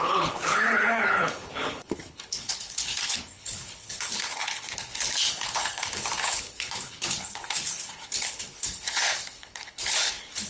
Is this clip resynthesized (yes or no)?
yes